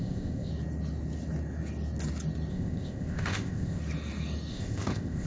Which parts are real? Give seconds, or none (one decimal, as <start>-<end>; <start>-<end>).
0.5-2.5; 3.8-4.5